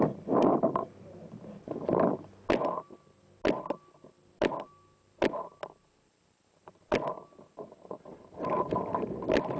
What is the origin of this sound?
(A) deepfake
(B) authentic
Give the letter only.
B